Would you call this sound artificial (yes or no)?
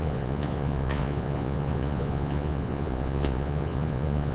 yes